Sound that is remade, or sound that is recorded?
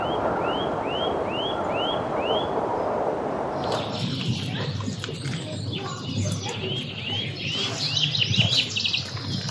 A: recorded